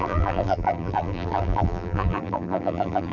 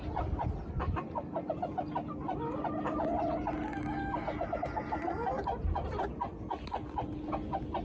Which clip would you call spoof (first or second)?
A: first